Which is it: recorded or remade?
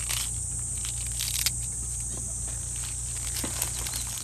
recorded